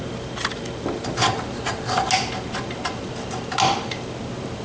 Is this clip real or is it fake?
real